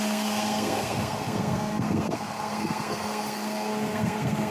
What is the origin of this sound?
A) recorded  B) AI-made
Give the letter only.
B